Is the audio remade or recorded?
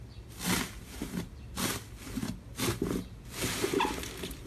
recorded